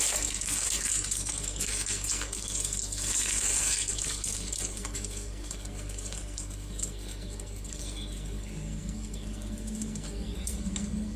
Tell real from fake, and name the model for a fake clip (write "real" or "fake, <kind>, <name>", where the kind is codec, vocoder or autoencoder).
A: fake, codec, SNAC